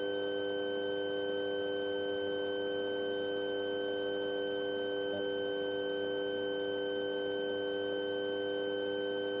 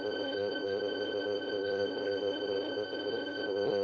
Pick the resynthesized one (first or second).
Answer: second